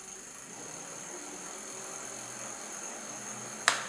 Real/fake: real